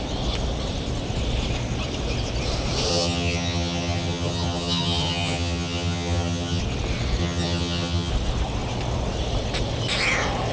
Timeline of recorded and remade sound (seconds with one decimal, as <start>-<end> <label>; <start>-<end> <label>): 0.0-2.9 recorded; 2.9-6.6 remade; 6.6-7.2 recorded; 7.2-8.1 remade; 8.1-10.5 recorded